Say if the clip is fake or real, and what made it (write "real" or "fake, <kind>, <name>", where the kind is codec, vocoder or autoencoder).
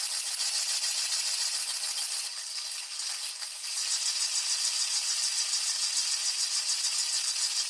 real